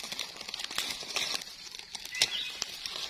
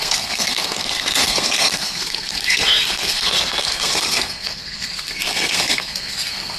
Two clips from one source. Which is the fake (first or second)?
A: second